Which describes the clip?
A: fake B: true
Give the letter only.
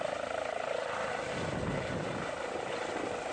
A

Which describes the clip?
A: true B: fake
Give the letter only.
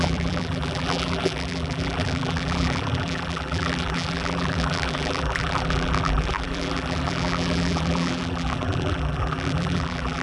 B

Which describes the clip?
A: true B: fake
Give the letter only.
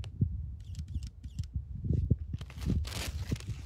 A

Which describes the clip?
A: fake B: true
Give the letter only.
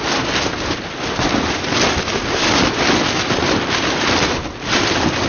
B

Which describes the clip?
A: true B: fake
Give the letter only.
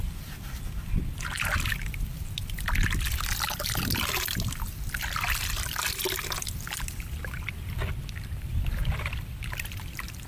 A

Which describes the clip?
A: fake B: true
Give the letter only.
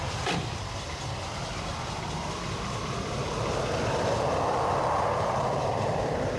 A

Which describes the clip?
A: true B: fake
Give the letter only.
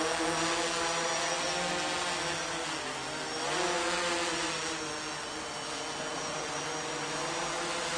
A